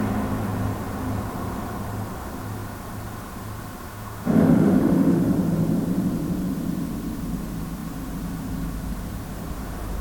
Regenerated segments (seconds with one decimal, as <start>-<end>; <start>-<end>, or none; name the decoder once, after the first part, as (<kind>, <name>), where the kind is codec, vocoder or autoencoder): 3.9-5.2 (autoencoder, DAC-VAE)